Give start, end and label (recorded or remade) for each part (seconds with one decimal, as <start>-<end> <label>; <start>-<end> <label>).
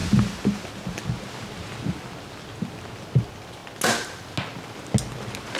0.0-5.6 recorded